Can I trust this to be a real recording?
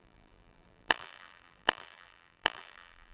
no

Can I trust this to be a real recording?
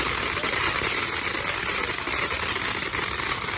yes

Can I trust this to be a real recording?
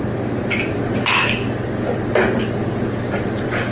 yes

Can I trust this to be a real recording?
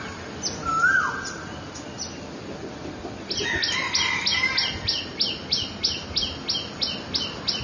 yes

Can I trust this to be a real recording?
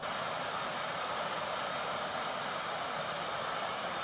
yes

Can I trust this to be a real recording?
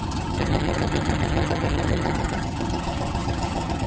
no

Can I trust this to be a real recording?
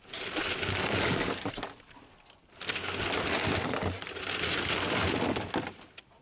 yes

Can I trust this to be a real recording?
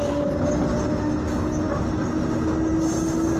yes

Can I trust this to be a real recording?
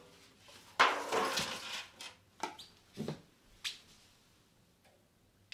yes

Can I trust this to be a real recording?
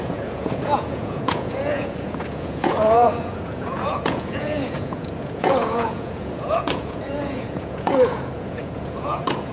no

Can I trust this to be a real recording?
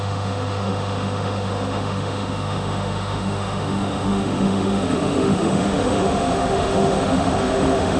no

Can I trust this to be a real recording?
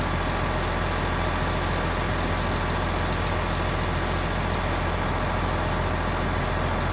yes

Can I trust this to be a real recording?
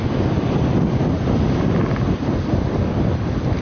yes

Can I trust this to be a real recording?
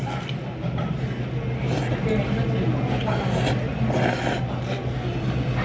yes